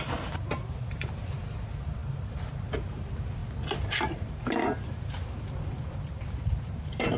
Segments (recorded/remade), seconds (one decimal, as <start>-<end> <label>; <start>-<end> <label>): 0.0-3.4 remade; 3.4-4.1 recorded; 4.1-7.2 remade